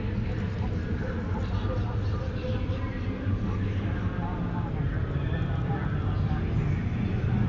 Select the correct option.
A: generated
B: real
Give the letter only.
B